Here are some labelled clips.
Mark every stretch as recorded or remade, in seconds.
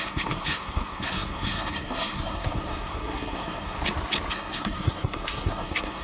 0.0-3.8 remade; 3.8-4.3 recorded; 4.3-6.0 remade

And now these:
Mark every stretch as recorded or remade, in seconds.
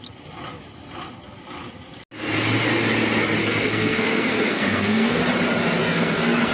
0.0-3.4 recorded; 3.4-5.2 remade; 5.2-5.8 recorded; 5.8-6.5 remade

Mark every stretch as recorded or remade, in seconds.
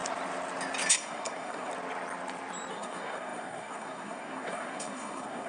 0.0-0.9 recorded; 0.9-1.7 remade; 1.7-2.7 recorded; 2.7-5.5 remade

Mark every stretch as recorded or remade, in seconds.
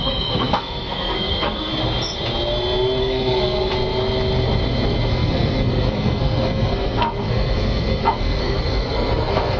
0.0-1.7 remade; 1.7-3.0 recorded; 3.0-3.7 remade; 3.7-5.1 recorded; 5.1-9.6 remade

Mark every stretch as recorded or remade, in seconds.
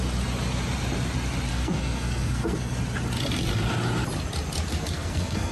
0.0-1.5 recorded; 1.5-2.8 remade; 2.8-4.7 recorded; 4.7-5.5 remade